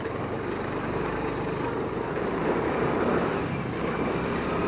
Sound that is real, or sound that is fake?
fake